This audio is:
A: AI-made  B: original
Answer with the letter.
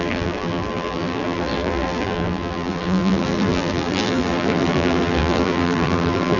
A